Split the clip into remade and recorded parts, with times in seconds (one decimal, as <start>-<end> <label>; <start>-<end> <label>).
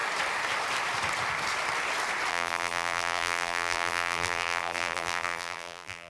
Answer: 0.0-2.3 recorded; 2.3-6.1 remade